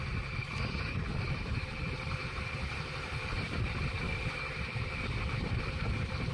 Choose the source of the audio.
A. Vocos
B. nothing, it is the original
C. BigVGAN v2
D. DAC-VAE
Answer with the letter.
C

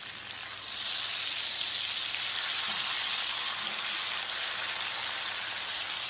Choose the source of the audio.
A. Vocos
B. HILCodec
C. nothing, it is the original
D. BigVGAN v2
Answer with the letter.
C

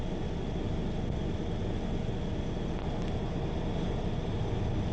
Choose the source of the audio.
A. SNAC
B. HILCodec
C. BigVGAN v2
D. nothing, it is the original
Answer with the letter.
D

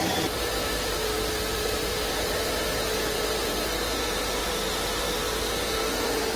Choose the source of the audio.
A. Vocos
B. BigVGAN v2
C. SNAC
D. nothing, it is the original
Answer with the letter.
B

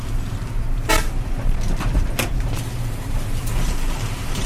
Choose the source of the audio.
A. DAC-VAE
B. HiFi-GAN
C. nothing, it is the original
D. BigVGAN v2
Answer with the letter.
D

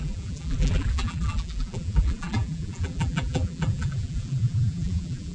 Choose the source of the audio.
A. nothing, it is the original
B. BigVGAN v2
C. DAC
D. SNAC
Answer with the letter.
B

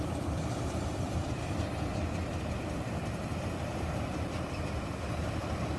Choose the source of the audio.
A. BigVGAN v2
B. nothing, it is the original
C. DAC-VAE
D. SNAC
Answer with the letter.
A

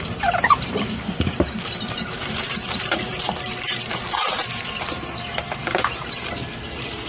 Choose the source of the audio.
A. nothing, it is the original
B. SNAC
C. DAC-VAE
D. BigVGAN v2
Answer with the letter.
D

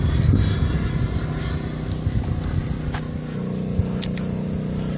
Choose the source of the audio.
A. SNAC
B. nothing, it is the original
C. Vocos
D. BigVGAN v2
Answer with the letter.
B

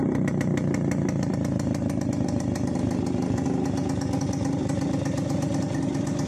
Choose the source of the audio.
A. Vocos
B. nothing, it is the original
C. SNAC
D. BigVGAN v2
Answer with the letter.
B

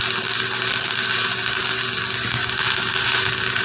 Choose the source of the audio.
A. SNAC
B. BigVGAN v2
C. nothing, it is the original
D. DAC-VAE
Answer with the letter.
C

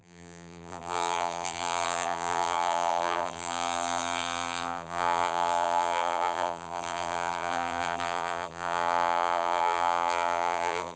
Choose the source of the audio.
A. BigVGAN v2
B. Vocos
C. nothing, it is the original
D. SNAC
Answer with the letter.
A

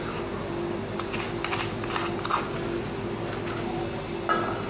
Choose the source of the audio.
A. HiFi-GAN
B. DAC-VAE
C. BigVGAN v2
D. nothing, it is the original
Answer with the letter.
D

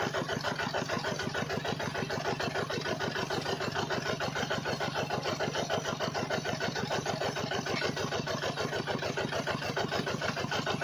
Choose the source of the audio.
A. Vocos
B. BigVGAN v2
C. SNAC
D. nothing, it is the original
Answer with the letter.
D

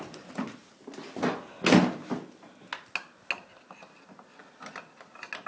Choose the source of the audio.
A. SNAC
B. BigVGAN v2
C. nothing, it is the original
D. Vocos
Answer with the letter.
C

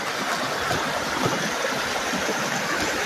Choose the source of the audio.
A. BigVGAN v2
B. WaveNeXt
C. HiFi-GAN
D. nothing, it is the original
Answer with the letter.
D